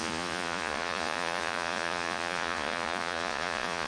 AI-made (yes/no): yes